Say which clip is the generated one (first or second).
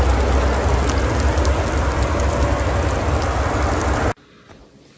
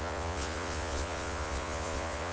second